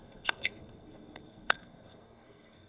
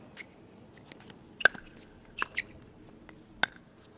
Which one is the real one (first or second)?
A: second